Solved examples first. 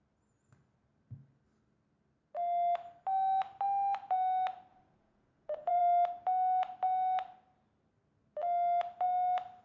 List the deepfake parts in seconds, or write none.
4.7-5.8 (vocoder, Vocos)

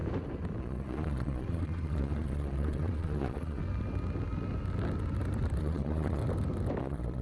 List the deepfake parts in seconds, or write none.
0.6-3.6 (vocoder, Vocos); 5.6-6.2; 6.8-7.2

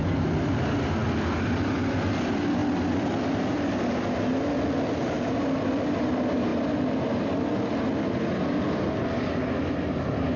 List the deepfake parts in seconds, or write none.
none

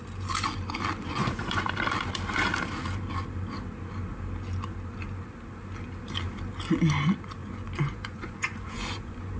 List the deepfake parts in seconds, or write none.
1.1-1.6 (vocoder, Vocos); 7.4-9.4

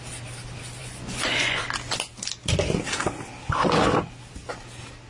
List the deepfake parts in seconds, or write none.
0.8-1.6 (vocoder, Vocos)

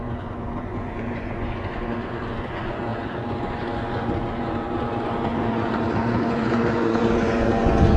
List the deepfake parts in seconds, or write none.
0.0-8.0 (vocoder, Vocos)

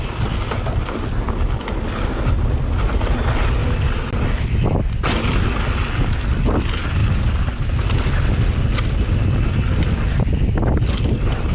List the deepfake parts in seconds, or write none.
none

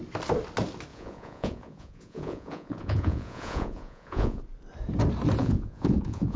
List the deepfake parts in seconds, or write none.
0.9-4.4 (vocoder, Vocos); 5.4-6.4